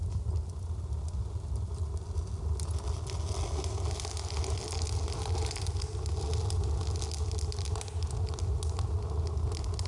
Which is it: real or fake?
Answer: real